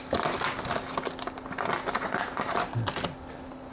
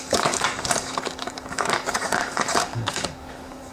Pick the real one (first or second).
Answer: first